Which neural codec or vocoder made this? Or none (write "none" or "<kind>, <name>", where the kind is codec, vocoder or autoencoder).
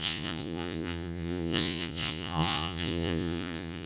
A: vocoder, Vocos